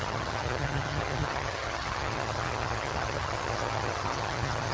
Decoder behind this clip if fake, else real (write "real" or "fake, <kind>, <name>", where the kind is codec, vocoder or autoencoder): fake, vocoder, HiFi-GAN